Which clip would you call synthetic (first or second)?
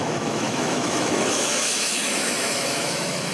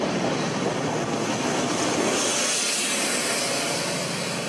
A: first